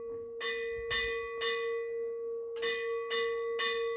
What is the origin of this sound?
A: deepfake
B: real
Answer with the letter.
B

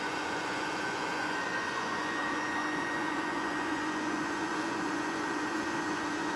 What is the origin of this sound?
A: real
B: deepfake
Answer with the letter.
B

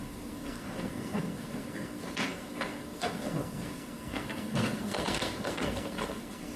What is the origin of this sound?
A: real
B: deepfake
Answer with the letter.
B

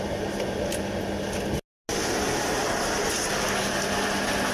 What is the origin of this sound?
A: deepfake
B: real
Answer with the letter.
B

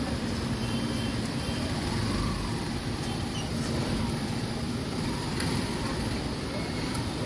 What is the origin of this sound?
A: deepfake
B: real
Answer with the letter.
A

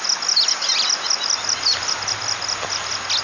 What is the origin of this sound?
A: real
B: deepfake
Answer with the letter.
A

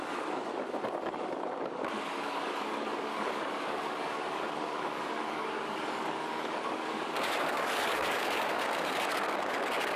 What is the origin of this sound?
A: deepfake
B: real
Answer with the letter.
A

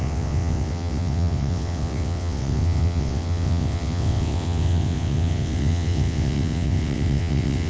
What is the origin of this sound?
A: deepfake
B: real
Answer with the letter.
A